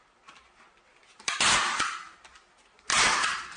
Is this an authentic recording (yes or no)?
yes